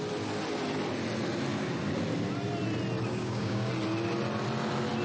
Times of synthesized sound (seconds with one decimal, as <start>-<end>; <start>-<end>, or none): 3.1-3.7